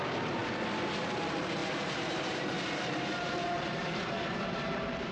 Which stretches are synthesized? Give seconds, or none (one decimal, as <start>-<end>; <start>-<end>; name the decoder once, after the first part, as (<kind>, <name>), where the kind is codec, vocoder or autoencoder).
1.6-5.1 (vocoder, BigVGAN v2)